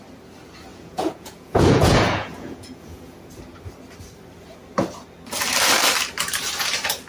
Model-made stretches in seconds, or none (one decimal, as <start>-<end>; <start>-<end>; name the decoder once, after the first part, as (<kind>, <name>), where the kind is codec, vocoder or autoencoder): 0.7-3.3 (vocoder, Vocos)